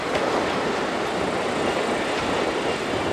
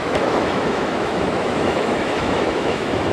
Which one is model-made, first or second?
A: second